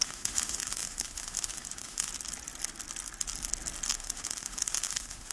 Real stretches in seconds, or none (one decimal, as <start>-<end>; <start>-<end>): 2.1-3.9